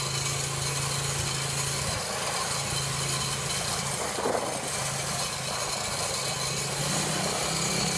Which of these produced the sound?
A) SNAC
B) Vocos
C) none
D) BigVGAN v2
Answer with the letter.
C